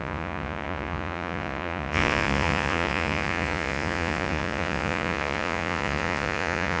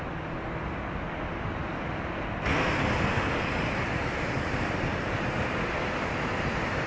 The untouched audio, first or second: second